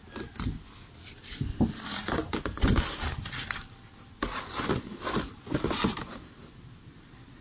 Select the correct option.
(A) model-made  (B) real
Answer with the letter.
B